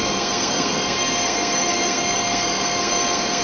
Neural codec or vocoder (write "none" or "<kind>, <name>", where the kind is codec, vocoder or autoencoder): codec, SNAC